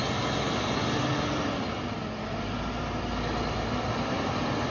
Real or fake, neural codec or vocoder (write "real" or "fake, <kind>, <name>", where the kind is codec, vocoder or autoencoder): real